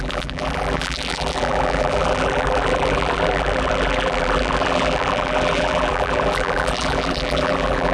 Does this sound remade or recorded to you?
remade